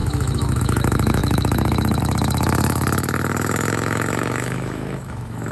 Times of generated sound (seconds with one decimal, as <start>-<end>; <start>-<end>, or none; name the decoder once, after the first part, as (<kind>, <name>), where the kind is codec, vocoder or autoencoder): 0.0-5.5 (autoencoder, DAC-VAE)